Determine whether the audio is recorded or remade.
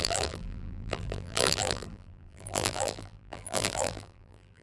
remade